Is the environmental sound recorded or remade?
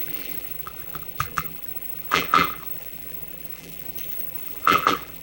remade